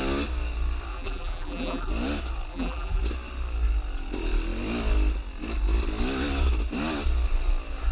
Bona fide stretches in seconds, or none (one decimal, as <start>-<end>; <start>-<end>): 0.0-0.9; 1.9-2.5; 3.0-7.9